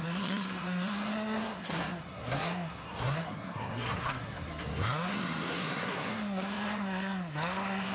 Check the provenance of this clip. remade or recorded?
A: remade